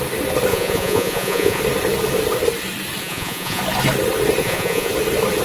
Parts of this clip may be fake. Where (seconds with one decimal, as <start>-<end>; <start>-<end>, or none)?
0.5-1.6; 3.0-3.6; 4.4-4.9